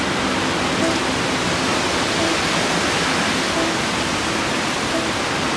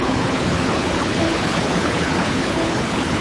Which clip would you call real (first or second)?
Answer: first